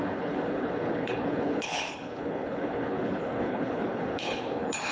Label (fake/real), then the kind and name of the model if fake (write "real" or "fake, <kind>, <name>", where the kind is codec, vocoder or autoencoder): fake, codec, HILCodec